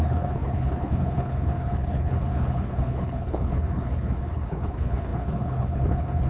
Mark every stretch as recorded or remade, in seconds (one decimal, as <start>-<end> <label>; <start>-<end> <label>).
0.0-6.3 remade